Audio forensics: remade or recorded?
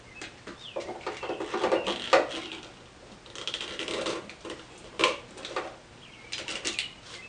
recorded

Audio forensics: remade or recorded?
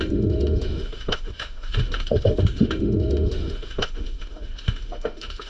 remade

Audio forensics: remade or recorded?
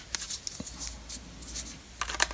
recorded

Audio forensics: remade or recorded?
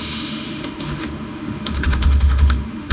remade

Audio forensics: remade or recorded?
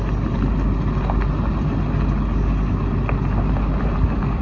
recorded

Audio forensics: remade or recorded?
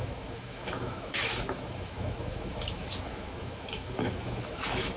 remade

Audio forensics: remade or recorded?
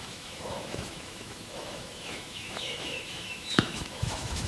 remade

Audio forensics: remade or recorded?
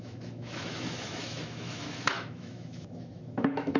remade